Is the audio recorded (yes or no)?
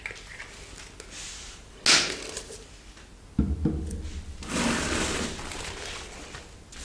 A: yes